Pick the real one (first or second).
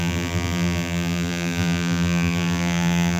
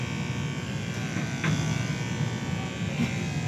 second